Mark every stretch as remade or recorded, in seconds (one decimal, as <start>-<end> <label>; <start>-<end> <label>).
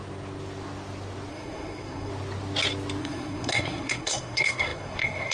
0.0-1.3 recorded; 1.3-2.1 remade; 2.1-3.0 recorded; 3.0-5.3 remade